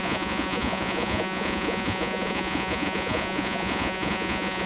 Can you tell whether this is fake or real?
fake